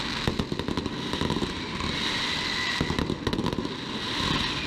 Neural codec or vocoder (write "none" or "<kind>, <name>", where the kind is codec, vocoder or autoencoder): none